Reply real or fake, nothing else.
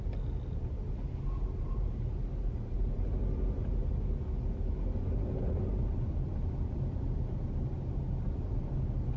real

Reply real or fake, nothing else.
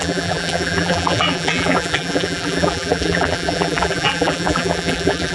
fake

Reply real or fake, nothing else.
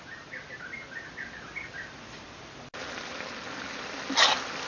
real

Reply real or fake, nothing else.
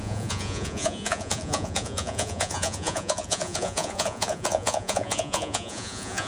fake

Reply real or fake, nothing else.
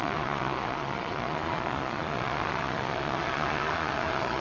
fake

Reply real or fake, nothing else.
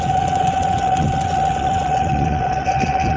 fake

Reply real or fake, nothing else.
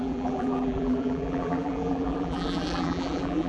fake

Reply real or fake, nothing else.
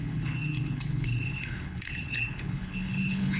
fake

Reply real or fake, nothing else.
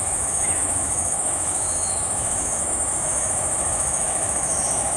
fake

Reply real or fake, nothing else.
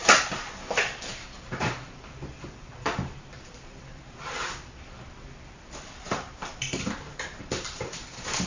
fake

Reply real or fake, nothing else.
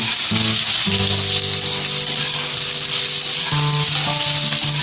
real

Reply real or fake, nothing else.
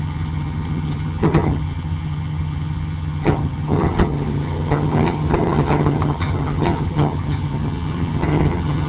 fake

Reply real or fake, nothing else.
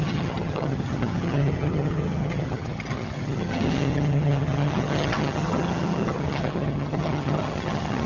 fake